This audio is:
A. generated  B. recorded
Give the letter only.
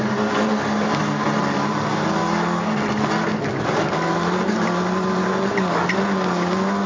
B